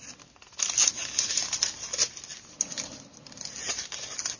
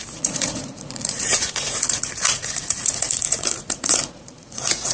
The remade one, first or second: second